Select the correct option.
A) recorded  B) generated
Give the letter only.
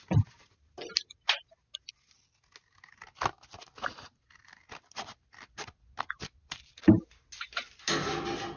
A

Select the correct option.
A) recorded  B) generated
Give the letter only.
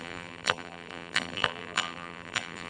B